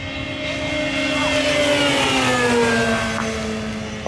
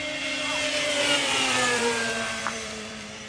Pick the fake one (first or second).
second